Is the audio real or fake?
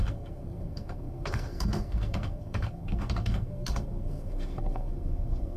fake